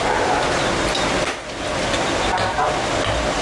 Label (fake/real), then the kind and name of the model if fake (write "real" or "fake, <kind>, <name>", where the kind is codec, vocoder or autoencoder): real